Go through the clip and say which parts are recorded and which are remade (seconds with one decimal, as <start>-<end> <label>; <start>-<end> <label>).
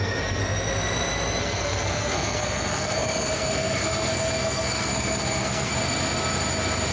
0.0-0.4 remade; 0.4-1.4 recorded; 1.4-5.7 remade; 5.7-6.9 recorded